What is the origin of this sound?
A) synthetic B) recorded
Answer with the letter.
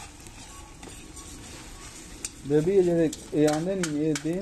B